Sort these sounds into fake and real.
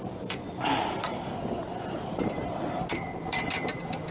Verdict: real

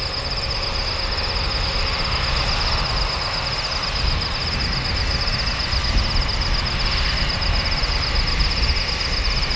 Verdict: real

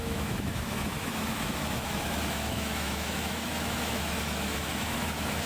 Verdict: fake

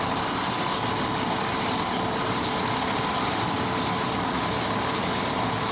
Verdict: real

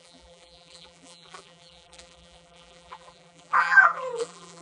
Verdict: fake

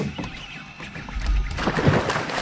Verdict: real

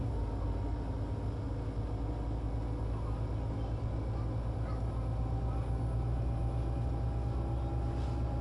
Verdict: real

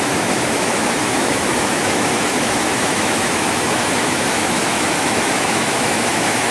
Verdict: fake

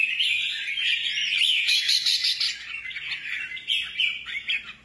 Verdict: real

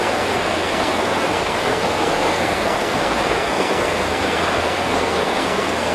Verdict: fake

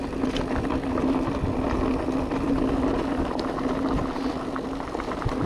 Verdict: real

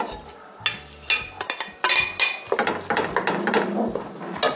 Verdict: real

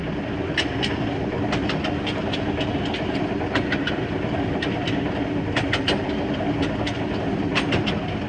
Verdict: real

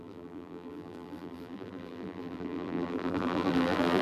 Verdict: fake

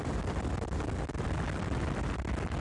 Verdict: real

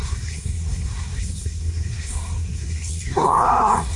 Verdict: fake